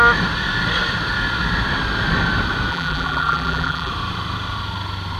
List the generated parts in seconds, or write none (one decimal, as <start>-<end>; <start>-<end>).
2.7-3.9